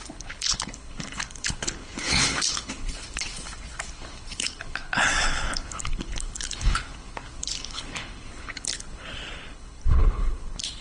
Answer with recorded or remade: remade